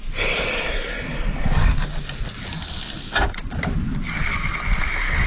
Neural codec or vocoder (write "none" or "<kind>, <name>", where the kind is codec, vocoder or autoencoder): none